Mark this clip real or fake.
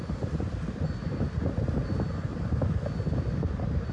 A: real